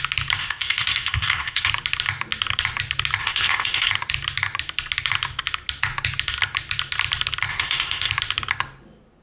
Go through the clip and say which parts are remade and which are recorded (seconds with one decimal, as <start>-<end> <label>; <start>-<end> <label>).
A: 0.0-0.4 recorded; 0.4-1.7 remade; 1.7-3.2 recorded; 3.2-3.9 remade; 3.9-7.5 recorded; 7.5-8.1 remade; 8.1-9.2 recorded